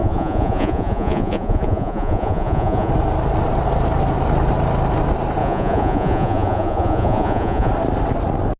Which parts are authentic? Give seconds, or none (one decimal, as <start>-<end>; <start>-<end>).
2.9-5.4; 7.7-8.6